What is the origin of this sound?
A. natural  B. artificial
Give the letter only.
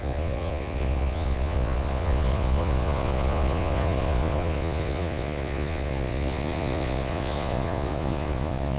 B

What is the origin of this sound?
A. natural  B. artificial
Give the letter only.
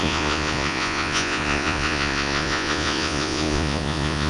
B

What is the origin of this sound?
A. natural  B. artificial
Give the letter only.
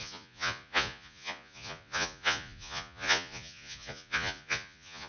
B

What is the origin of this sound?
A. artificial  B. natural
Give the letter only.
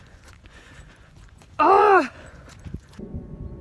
A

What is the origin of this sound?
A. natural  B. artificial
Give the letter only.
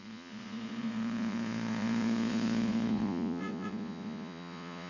B